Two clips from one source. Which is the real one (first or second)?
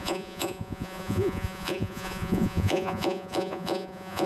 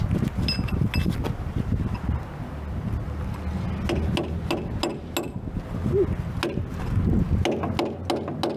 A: second